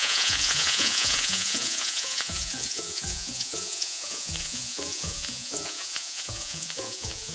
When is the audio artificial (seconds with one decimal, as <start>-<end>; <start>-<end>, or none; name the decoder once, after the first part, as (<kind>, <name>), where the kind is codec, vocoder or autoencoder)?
0.0-7.3 (vocoder, Vocos)